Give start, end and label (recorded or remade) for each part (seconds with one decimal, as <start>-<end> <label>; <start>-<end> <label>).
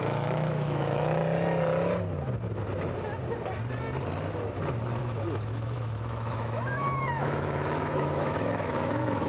0.0-1.2 remade; 1.2-5.0 recorded; 5.0-9.3 remade